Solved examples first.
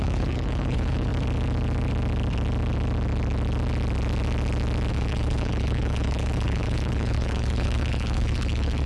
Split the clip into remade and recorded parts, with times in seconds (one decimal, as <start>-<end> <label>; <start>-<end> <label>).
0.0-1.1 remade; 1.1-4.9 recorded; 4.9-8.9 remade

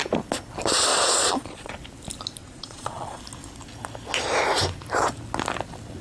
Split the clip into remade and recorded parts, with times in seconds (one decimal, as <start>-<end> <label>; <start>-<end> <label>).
0.0-0.9 recorded; 0.9-1.7 remade; 1.7-2.4 recorded; 2.4-3.2 remade; 3.2-6.0 recorded

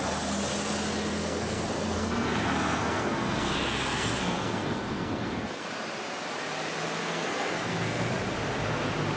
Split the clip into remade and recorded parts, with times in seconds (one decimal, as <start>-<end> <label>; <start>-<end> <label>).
0.0-1.1 recorded; 1.1-5.7 remade; 5.7-7.0 recorded; 7.0-8.1 remade; 8.1-9.2 recorded